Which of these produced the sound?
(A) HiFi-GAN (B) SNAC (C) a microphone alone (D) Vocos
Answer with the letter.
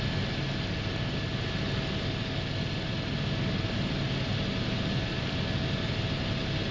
C